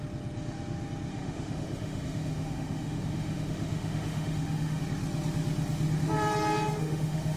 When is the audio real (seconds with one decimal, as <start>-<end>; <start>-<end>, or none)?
0.0-1.1; 4.8-6.8